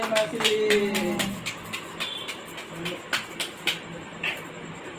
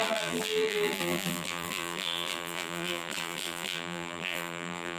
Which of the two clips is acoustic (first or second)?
first